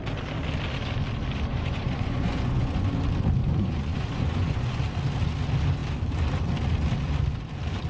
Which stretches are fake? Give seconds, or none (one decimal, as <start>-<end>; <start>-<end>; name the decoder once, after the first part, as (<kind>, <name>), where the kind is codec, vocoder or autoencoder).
1.5-2.9 (vocoder, Vocos); 3.4-4.8